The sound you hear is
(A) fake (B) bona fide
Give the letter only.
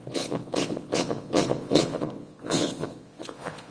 A